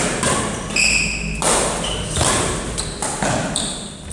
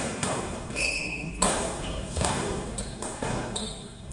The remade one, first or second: second